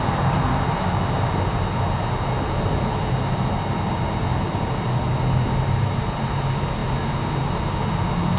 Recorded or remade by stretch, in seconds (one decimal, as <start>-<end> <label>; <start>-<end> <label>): 0.0-4.3 recorded; 4.3-6.0 remade; 6.0-8.4 recorded